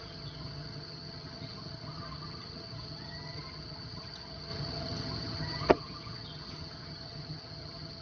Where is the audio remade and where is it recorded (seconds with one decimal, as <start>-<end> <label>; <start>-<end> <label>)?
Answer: 0.0-8.0 remade